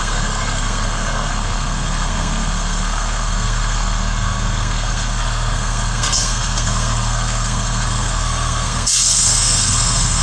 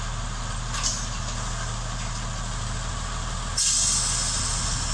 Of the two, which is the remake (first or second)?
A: first